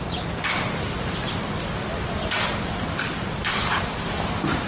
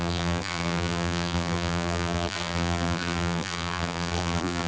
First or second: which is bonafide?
first